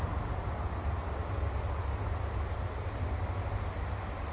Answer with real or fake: real